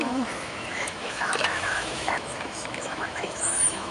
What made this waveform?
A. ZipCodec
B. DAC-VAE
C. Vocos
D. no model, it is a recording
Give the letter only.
B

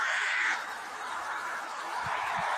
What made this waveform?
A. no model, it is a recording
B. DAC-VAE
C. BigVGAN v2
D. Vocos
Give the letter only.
B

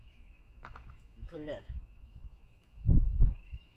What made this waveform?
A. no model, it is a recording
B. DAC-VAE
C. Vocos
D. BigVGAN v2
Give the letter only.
B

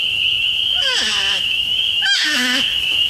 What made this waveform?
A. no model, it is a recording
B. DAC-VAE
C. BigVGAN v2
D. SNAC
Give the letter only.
B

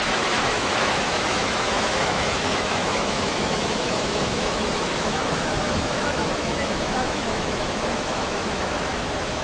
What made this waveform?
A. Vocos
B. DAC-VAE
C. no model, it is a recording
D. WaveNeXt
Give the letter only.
B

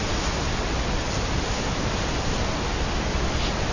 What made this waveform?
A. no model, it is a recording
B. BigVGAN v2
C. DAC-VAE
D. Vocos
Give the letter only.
A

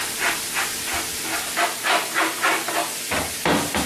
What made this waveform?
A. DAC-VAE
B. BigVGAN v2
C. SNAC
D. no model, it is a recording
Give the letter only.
D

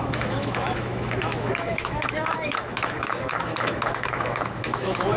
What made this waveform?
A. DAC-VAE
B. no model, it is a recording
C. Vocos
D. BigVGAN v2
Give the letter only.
A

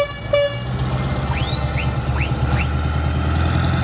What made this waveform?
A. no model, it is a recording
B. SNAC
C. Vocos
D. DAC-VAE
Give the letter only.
A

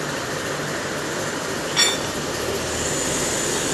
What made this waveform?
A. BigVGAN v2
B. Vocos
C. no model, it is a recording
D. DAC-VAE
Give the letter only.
C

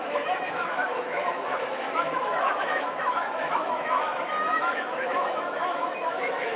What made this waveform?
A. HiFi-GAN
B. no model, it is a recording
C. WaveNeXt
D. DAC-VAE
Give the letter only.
D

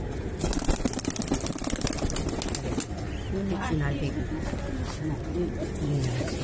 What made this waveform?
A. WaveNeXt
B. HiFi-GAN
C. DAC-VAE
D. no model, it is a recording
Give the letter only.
D